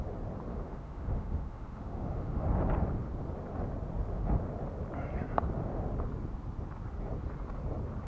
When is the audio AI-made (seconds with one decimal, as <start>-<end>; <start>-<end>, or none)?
0.5-2.4